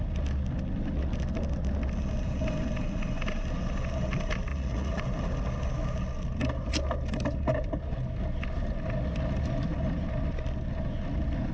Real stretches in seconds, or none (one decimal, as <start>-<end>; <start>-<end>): 0.0-4.5; 5.0-11.5